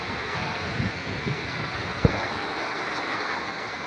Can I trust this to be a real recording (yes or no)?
no